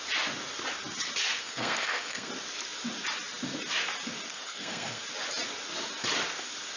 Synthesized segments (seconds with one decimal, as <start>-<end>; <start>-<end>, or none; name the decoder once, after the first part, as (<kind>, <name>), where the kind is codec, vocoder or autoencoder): 1.4-2.3 (codec, SNAC); 4.3-5.0

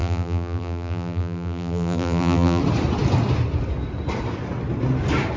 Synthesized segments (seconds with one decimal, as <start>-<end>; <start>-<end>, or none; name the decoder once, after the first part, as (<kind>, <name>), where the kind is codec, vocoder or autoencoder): 0.0-2.6 (vocoder, BigVGAN v2)

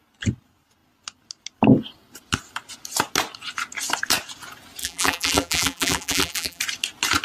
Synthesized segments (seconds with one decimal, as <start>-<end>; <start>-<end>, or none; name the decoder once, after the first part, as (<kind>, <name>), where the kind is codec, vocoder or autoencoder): 4.8-6.6 (vocoder, BigVGAN v2)

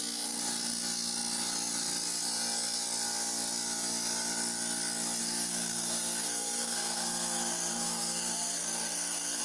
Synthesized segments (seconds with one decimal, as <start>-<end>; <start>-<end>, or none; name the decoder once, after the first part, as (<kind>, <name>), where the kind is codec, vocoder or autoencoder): 5.2-9.4 (codec, SNAC)

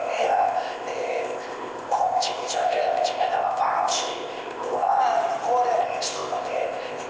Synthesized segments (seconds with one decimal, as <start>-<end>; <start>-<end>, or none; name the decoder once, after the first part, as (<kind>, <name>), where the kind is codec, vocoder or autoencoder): 0.0-5.0 (codec, ZipCodec); 5.8-7.1